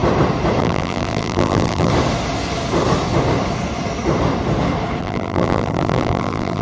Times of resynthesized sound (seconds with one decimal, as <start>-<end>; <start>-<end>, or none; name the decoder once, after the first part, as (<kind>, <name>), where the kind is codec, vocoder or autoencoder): 0.6-1.9 (vocoder, BigVGAN v2); 5.0-6.6